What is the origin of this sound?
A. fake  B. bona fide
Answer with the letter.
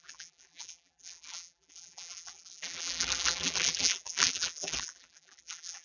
A